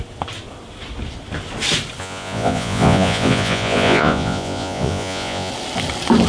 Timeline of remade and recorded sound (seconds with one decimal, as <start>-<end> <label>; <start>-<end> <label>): 0.0-2.0 recorded; 2.0-5.5 remade; 5.5-6.3 recorded